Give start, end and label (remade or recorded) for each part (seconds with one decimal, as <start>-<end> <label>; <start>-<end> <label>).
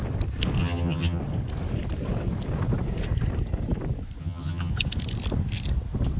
0.0-0.6 recorded; 0.6-1.2 remade; 1.2-4.2 recorded; 4.2-4.7 remade; 4.7-6.2 recorded